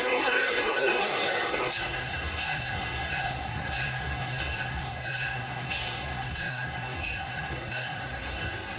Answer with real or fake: fake